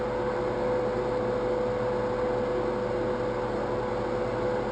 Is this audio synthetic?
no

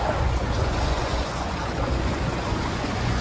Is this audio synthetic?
yes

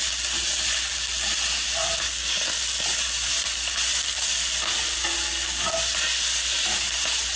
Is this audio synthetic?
no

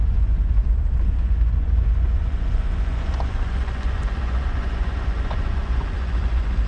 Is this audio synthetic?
yes